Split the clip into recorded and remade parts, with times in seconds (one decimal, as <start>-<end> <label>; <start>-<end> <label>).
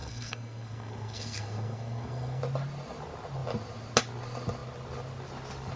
0.0-2.4 remade; 2.4-5.8 recorded